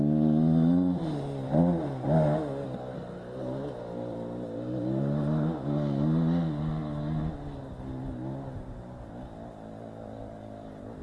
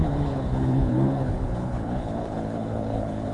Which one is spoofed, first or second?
second